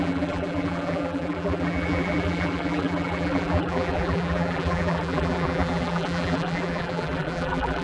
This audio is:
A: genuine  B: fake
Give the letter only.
B